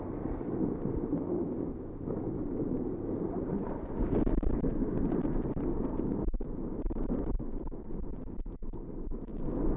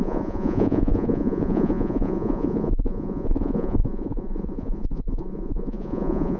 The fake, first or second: second